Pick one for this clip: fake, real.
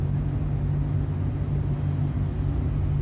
real